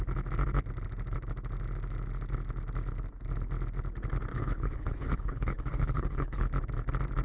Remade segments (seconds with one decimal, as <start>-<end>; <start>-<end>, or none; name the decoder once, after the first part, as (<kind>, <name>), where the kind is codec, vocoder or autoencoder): 4.3-6.5 (codec, HILCodec)